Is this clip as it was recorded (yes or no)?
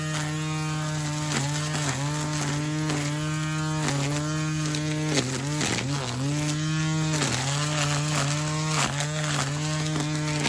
yes